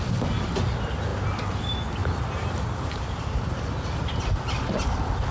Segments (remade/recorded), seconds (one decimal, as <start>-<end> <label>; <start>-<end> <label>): 0.0-2.0 recorded; 2.0-4.2 remade; 4.2-5.3 recorded